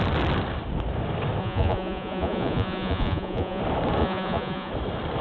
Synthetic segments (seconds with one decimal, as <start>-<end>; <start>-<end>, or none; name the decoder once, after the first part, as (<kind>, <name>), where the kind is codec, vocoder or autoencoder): 1.4-3.6 (vocoder, Vocos); 4.0-4.7